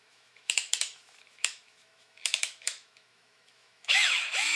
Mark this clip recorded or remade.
remade